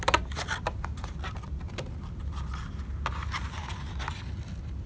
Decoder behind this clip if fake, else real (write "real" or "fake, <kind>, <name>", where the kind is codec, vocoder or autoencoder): real